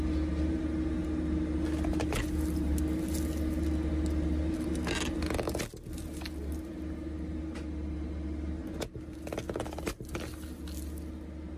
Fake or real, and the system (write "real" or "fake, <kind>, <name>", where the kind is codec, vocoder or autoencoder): real